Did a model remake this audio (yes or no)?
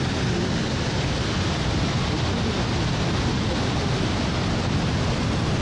no